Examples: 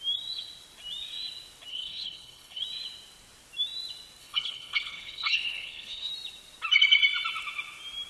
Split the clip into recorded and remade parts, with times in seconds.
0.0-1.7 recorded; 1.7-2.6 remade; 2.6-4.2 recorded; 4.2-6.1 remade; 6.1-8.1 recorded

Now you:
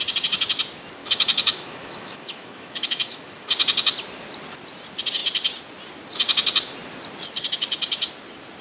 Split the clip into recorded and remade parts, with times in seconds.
0.0-1.0 recorded; 1.0-3.5 remade; 3.5-8.6 recorded

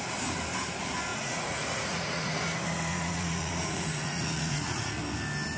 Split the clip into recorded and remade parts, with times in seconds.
0.0-1.1 recorded; 1.1-2.4 remade; 2.4-2.9 recorded; 2.9-5.0 remade; 5.0-5.6 recorded

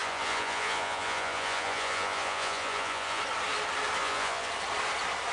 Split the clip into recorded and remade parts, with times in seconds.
0.0-3.2 remade; 3.2-4.0 recorded; 4.0-4.5 remade; 4.5-5.3 recorded

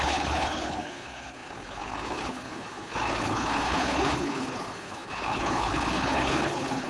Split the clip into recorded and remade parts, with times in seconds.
0.0-6.9 remade

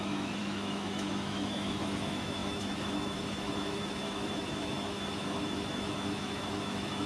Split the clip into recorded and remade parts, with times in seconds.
0.0-7.1 remade

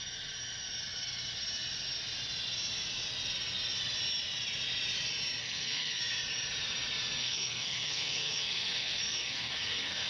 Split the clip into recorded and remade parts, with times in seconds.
0.0-5.4 recorded; 5.4-6.0 remade; 6.0-7.2 recorded; 7.2-10.1 remade